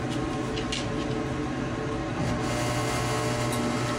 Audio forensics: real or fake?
real